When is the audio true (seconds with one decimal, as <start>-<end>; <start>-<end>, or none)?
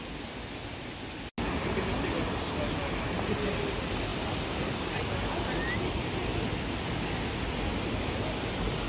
0.0-8.9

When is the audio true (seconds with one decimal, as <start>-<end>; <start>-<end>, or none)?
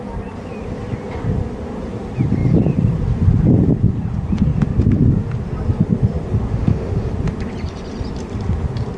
0.0-6.5; 7.1-9.0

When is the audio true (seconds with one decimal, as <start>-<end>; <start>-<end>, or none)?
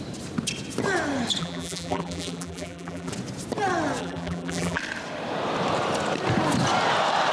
0.0-1.4; 3.1-4.0; 4.8-7.3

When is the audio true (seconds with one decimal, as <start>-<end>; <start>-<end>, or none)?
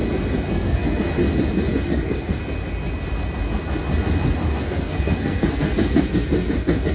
0.0-0.5; 1.2-1.8; 2.4-4.4